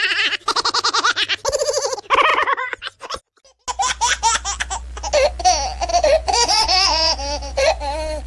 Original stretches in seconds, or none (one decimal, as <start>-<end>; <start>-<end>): 0.0-2.3; 3.2-5.9; 7.8-8.3